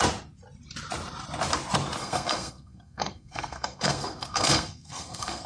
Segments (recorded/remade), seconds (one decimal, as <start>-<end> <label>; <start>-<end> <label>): 0.0-2.0 recorded; 2.0-5.5 remade